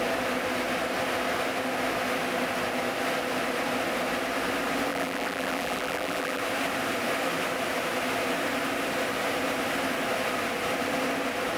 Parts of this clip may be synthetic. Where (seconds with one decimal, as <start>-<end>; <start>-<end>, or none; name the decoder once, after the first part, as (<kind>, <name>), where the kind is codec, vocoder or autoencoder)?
4.9-6.4 (vocoder, BigVGAN v2)